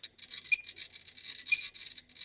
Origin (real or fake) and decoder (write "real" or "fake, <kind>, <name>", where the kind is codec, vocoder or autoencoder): real